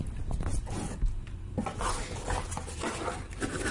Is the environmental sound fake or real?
real